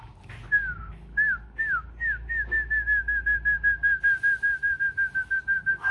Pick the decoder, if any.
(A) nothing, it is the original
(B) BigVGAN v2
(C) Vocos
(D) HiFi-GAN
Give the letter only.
A